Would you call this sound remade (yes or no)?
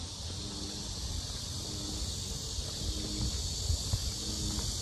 no